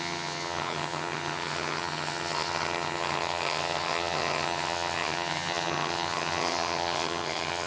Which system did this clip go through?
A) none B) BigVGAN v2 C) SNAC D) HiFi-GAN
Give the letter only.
D